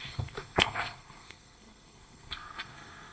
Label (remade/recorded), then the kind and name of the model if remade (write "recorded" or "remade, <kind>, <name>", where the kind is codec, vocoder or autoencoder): remade, codec, SNAC